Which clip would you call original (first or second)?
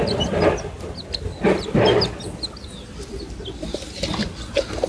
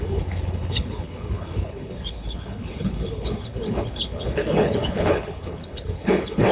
first